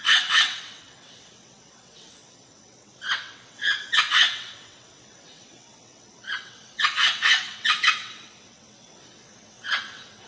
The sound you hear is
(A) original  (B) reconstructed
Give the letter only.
B